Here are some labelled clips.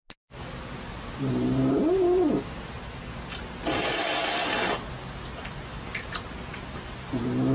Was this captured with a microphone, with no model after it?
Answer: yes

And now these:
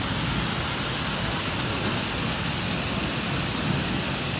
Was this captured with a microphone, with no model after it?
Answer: yes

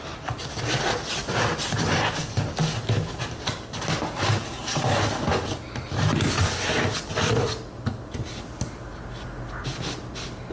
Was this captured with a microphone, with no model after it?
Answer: yes